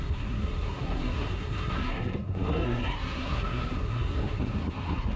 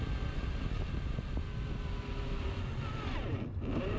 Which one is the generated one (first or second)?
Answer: first